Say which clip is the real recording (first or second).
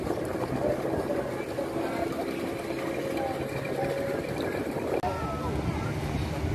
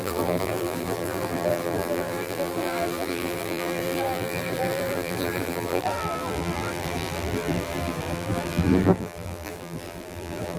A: first